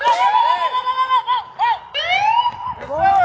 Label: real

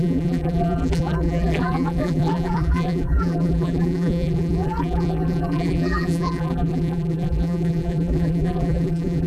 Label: fake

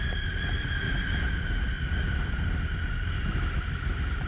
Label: real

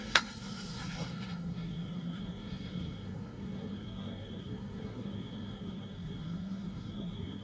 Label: fake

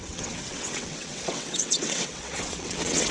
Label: fake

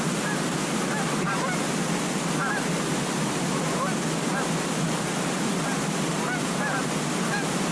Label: real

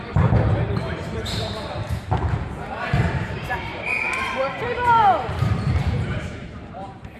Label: fake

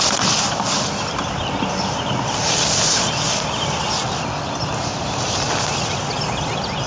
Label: real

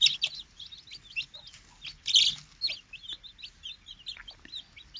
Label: real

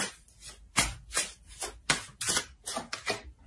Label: real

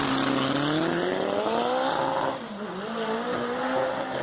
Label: real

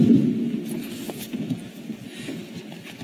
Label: real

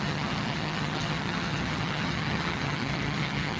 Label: fake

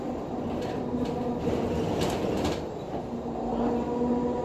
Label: real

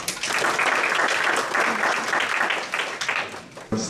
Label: fake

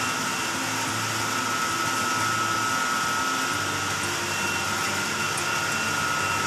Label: real